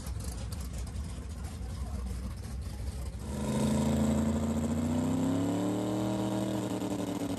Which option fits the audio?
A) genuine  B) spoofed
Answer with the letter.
A